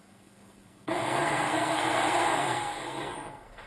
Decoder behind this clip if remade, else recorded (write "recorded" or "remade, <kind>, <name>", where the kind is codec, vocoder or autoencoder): remade, codec, SNAC